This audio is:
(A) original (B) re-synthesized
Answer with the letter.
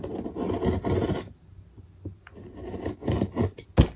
A